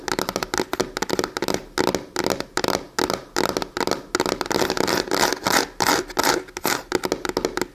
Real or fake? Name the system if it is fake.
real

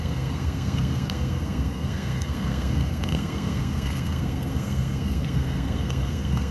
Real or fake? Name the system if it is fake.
fake, codec, SNAC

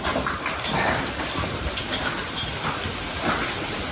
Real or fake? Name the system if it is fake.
real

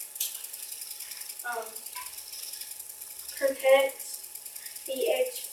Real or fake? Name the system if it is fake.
real